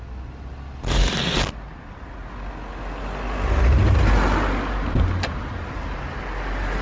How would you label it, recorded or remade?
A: recorded